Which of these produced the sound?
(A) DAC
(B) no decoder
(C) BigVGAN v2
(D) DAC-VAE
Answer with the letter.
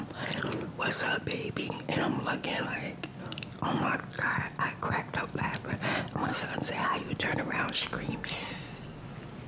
B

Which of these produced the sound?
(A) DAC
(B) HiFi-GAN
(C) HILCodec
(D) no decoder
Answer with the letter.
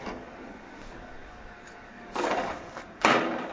A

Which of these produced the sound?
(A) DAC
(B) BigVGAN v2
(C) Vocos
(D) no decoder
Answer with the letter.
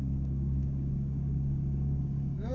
A